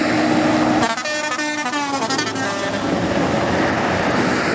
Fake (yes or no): no